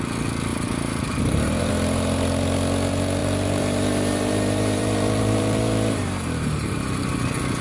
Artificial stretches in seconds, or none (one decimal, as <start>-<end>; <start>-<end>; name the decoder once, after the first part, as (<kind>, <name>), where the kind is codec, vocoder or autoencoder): 0.5-1.7 (vocoder, BigVGAN v2); 3.2-6.8